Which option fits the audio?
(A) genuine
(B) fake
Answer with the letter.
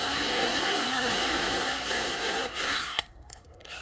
B